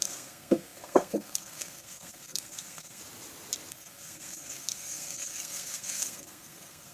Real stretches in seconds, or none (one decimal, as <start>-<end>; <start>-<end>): 3.0-3.7